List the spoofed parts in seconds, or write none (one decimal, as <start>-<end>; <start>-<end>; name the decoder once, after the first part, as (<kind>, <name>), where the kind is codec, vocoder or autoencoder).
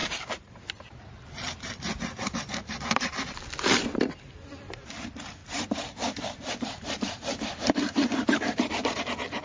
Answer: 0.0-0.5 (vocoder, BigVGAN v2); 5.4-9.0